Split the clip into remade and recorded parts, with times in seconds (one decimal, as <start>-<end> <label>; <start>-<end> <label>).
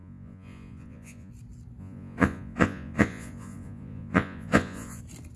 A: 0.0-1.3 remade; 1.3-1.8 recorded; 1.8-5.0 remade; 5.0-5.4 recorded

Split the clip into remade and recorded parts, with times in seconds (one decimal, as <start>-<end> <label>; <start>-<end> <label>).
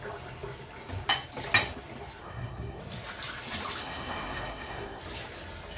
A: 0.0-2.2 recorded; 2.2-2.8 remade; 2.8-3.8 recorded; 3.8-5.0 remade; 5.0-5.8 recorded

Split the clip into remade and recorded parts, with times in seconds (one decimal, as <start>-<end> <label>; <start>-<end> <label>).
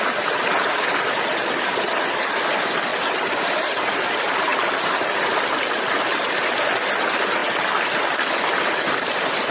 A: 0.0-9.5 recorded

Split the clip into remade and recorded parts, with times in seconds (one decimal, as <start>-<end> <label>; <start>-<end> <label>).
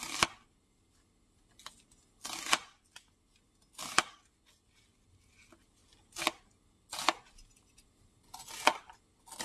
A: 0.0-9.4 recorded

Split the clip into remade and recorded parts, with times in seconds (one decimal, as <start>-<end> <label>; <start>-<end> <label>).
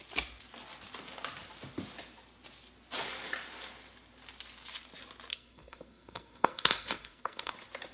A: 0.0-5.3 recorded; 5.3-7.5 remade; 7.5-7.9 recorded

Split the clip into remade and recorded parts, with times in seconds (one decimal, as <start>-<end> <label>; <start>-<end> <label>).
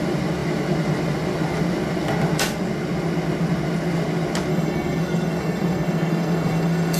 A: 0.0-4.5 recorded; 4.5-7.0 remade